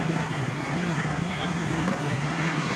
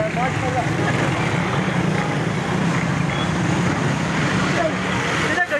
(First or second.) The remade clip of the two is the first